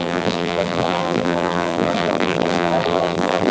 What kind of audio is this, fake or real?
fake